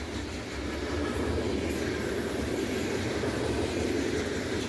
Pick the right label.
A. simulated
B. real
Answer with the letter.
B